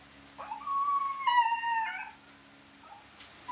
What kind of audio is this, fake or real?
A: real